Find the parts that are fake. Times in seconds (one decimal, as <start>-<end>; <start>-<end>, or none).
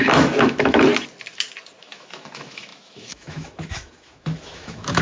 0.0-0.9; 1.8-5.0